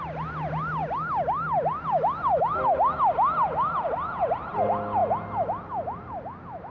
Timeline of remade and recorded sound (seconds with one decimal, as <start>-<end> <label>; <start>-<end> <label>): 0.0-6.7 recorded